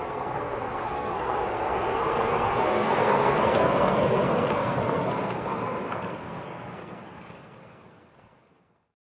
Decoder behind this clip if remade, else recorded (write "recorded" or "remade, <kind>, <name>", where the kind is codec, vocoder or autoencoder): remade, codec, SNAC